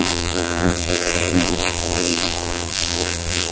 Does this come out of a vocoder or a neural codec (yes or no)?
yes